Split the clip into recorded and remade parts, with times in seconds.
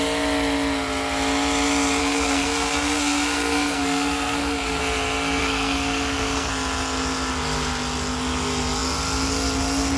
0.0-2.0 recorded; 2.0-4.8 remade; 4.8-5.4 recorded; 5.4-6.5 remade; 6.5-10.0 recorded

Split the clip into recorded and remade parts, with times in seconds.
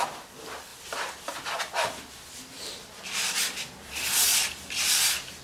0.0-0.7 recorded; 0.7-3.9 remade; 3.9-4.3 recorded; 4.3-5.4 remade